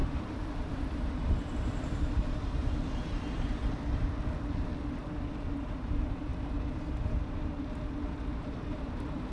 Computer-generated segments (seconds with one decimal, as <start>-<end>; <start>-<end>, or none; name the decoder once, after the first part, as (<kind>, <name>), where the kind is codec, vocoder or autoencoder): 0.0-3.6 (vocoder, BigVGAN v2); 5.0-9.3